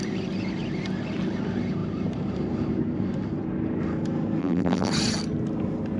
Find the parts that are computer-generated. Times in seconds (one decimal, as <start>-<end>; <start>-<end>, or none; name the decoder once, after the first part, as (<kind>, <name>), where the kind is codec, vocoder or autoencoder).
4.4-4.9 (vocoder, BigVGAN v2)